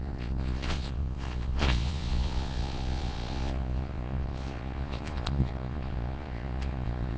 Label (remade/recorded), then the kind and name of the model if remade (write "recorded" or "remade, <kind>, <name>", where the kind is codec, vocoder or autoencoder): remade, vocoder, Vocos